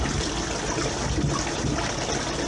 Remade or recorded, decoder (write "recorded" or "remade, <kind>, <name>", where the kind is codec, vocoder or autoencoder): recorded